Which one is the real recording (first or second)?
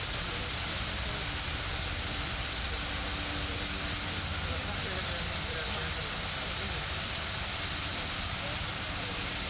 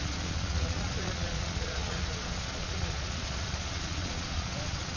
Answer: first